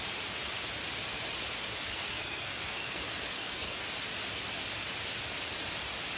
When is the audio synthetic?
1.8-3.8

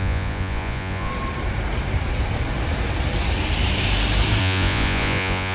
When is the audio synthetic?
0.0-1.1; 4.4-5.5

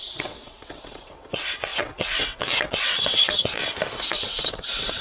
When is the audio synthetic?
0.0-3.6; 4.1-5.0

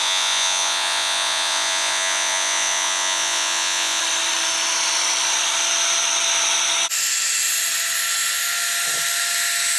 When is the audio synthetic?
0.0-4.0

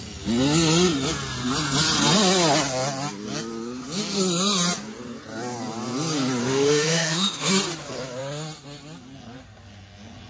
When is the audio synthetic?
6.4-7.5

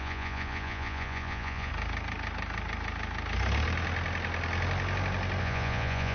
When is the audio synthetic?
0.0-1.7; 5.4-6.1